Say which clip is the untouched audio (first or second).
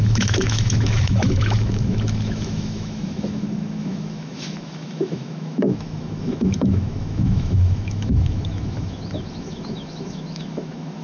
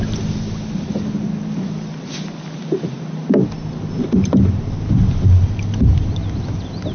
second